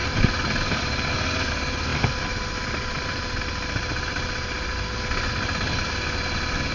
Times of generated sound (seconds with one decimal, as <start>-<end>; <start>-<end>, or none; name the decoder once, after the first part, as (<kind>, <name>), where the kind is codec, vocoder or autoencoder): none